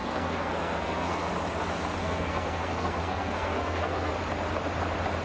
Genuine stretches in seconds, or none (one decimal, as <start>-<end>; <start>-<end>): 1.3-2.0; 4.1-5.2